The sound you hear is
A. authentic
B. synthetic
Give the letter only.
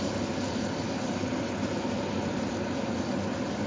A